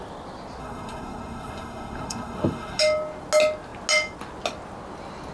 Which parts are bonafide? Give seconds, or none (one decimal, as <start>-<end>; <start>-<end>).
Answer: 0.0-0.6; 2.8-5.3